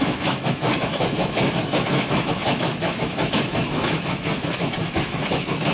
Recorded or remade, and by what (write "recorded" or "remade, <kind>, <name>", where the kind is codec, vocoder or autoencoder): remade, autoencoder, DAC-VAE